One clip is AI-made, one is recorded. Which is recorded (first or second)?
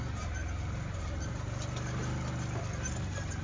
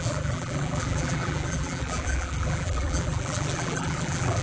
first